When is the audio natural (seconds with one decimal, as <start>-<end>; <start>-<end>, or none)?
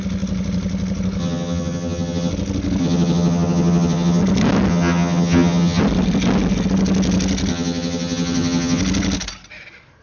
0.0-1.2; 2.3-2.8; 4.2-4.7; 5.8-7.5; 8.8-10.0